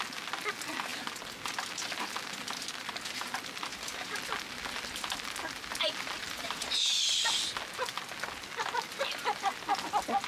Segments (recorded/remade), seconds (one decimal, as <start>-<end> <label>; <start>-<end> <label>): 0.0-3.7 recorded; 3.7-4.2 remade; 4.2-6.2 recorded; 6.2-6.9 remade; 6.9-10.3 recorded